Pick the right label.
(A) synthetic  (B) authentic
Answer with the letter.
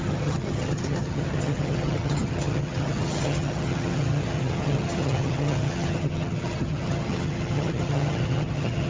A